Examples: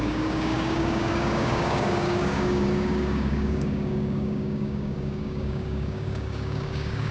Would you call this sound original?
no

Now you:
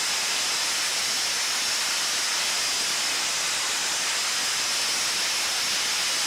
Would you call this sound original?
yes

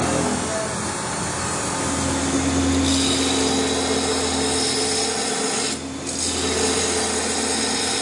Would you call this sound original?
yes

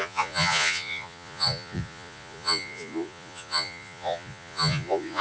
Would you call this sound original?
no